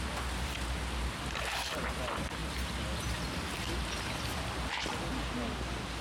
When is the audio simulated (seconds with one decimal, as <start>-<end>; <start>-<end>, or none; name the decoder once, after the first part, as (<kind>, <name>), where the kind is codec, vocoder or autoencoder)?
none